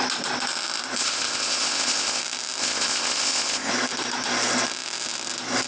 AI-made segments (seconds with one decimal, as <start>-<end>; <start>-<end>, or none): 1.0-2.2; 2.6-3.7